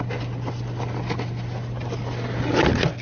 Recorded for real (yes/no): yes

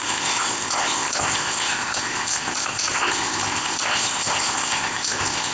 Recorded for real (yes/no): no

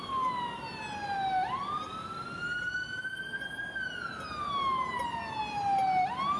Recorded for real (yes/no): yes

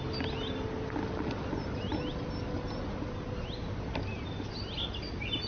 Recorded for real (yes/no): yes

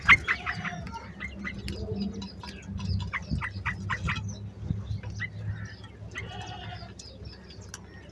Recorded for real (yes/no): yes